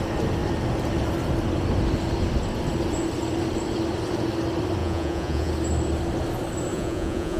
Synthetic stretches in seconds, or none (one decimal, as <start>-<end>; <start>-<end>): 4.8-5.5; 6.7-7.4